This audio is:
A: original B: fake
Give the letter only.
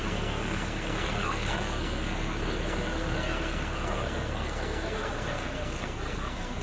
B